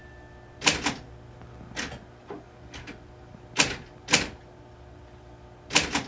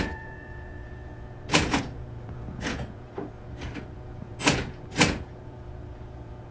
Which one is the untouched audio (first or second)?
first